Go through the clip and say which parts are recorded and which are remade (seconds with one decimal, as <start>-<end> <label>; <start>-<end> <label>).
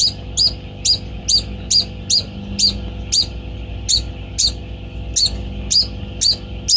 0.0-6.8 recorded